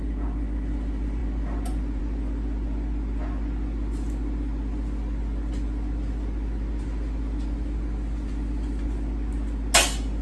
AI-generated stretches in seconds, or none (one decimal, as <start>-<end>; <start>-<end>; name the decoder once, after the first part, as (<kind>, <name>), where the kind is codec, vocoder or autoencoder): none